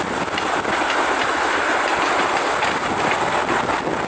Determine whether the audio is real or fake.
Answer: real